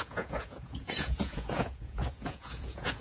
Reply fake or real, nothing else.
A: fake